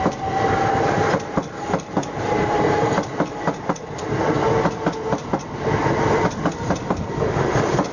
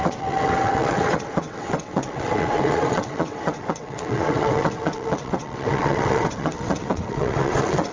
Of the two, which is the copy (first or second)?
second